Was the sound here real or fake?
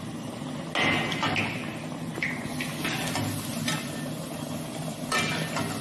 real